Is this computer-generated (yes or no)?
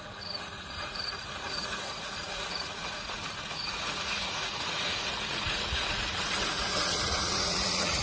yes